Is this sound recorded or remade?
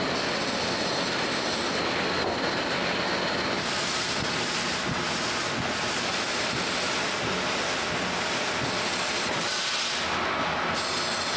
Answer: recorded